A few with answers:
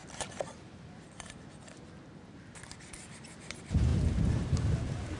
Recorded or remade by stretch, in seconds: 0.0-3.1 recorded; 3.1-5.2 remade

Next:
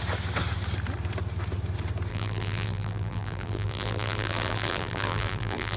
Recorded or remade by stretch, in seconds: 0.0-2.1 recorded; 2.1-5.8 remade

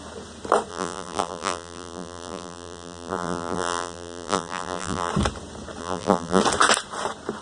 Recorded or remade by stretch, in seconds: 0.0-0.7 recorded; 0.7-5.1 remade; 5.1-5.8 recorded; 5.8-6.4 remade; 6.4-7.4 recorded

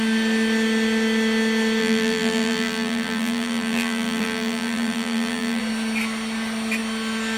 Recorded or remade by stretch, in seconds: 0.0-1.8 recorded; 1.8-5.6 remade; 5.6-7.4 recorded

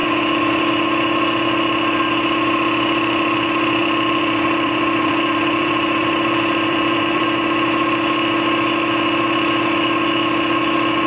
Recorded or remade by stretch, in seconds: 0.0-0.6 remade; 0.6-3.8 recorded; 3.8-7.2 remade; 7.2-11.1 recorded